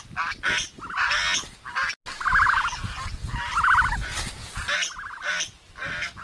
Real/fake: real